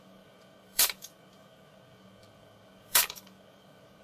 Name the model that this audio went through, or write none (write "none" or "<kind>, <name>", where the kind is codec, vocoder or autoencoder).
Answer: codec, DAC